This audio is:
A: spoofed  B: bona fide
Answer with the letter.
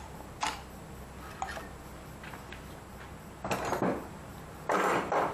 B